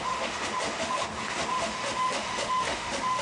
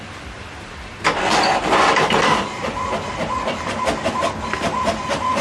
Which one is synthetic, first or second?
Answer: first